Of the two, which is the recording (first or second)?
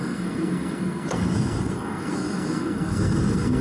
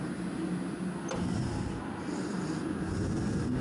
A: second